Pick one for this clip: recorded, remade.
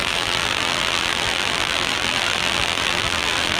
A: remade